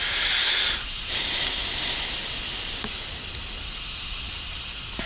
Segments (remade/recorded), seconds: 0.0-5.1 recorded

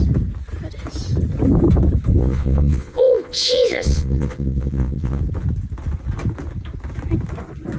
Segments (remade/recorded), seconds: 0.0-2.2 recorded; 2.2-5.2 remade; 5.2-7.8 recorded